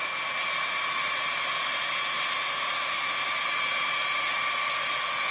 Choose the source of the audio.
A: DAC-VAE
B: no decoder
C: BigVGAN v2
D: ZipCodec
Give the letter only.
C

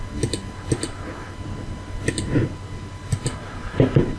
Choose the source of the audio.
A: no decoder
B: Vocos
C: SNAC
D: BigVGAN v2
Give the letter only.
A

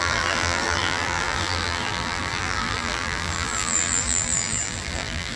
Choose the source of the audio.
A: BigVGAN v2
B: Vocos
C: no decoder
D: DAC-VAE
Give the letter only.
A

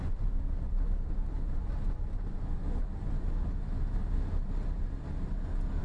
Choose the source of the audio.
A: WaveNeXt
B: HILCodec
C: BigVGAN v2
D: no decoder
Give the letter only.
D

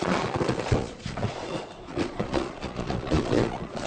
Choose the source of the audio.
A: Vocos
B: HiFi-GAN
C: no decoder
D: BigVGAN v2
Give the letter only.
A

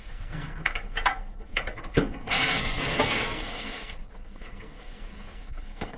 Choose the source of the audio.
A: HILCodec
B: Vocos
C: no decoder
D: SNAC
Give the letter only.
D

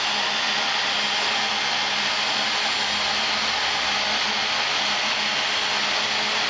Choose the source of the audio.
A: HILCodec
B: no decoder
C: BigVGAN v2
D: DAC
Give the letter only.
B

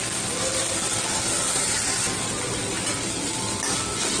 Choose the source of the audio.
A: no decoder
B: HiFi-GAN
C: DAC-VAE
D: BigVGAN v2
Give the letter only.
A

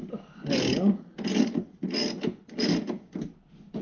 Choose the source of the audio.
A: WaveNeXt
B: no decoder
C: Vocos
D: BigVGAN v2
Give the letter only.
B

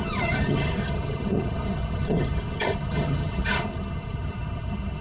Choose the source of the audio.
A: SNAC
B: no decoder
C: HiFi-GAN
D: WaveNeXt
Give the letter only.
C